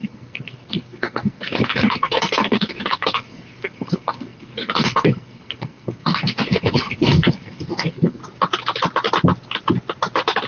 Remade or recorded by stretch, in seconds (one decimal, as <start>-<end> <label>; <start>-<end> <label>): 0.0-8.2 remade; 8.2-10.5 recorded